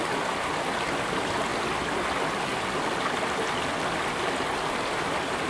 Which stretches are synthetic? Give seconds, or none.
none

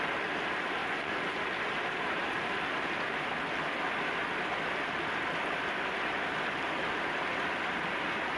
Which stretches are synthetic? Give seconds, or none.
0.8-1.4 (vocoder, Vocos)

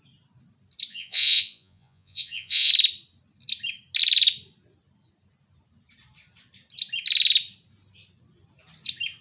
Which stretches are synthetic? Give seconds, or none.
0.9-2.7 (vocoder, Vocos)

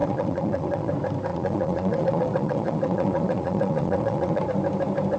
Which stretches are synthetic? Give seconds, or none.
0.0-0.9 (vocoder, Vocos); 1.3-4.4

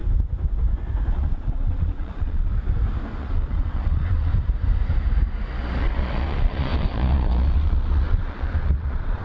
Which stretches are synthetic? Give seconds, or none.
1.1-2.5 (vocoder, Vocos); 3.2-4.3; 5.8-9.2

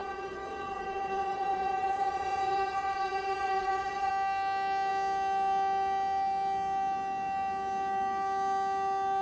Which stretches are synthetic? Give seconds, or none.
0.0-4.1 (vocoder, Vocos)

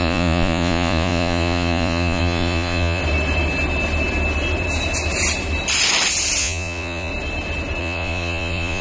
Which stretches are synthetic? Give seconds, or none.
0.0-3.0 (vocoder, Vocos); 6.4-7.1; 7.8-8.8